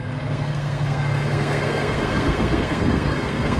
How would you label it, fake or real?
fake